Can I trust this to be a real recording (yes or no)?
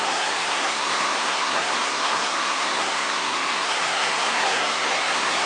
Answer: no